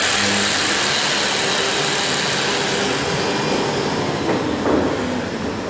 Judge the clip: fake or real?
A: real